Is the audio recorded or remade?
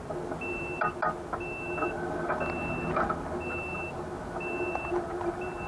recorded